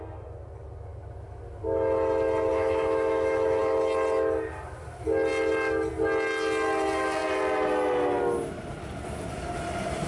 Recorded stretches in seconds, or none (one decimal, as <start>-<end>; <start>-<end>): 0.0-2.5; 3.6-10.1

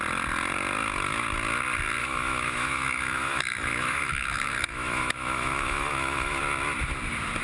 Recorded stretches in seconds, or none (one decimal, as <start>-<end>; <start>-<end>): 0.0-2.0; 6.4-7.4